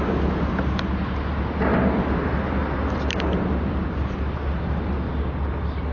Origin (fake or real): real